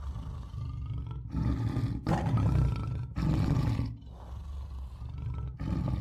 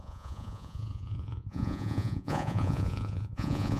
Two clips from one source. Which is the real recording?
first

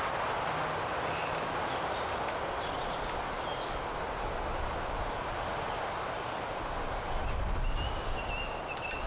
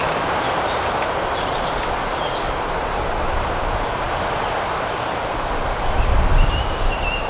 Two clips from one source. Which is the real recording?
first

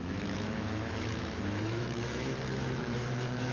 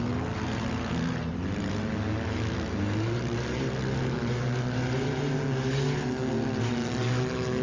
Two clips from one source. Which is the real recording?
second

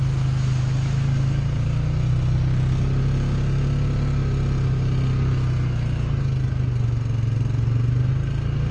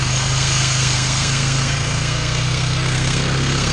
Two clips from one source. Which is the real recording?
first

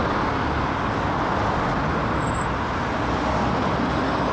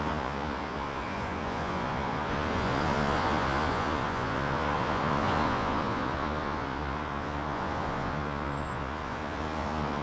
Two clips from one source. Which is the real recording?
first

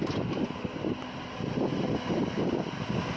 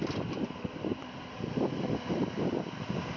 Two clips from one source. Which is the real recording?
first